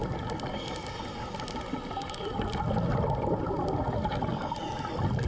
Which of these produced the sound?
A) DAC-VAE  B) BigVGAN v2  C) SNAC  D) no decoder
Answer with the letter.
D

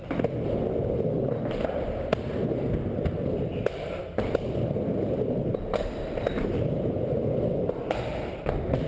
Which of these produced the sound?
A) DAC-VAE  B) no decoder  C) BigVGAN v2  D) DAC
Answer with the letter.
C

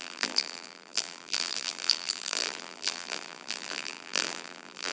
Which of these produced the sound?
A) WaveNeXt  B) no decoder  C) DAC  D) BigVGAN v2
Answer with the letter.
D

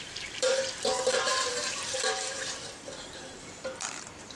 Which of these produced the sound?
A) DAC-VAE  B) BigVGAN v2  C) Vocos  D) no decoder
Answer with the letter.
B